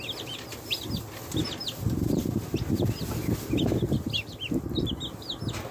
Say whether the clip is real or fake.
real